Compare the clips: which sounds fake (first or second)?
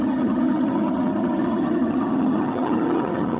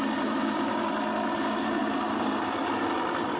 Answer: first